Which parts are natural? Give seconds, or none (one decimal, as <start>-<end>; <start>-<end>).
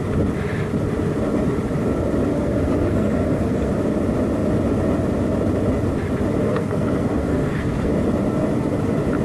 0.0-2.3; 3.7-6.4; 7.9-9.2